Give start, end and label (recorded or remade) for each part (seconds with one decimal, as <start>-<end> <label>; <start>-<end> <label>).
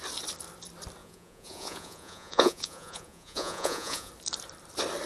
0.0-1.0 recorded; 1.0-4.1 remade; 4.1-5.1 recorded